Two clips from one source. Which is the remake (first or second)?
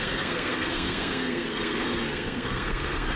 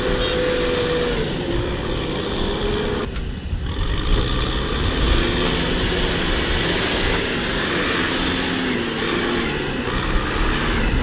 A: first